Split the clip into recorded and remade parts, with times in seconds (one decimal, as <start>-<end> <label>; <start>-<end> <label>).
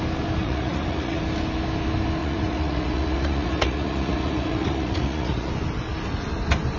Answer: 0.0-0.4 recorded; 0.4-1.2 remade; 1.2-2.2 recorded; 2.2-5.5 remade; 5.5-6.8 recorded